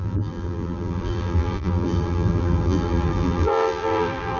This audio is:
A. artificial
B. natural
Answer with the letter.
A